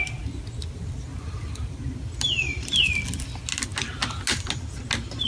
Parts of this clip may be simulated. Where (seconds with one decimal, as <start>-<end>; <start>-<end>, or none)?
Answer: 1.1-1.8